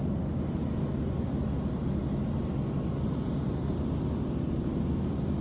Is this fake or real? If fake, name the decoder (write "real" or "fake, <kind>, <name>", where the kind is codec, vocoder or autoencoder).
real